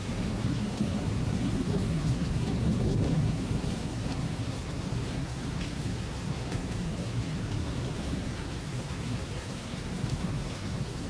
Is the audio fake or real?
fake